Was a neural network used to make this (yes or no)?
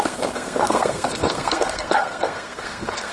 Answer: yes